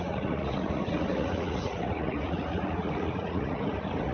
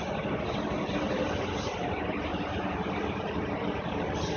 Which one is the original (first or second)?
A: second